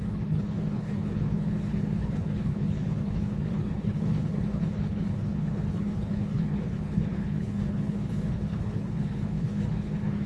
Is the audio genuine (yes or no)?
no